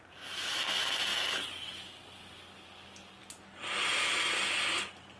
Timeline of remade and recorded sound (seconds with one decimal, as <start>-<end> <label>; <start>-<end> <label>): 0.0-5.2 recorded